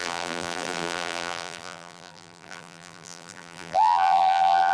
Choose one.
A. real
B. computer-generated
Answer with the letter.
B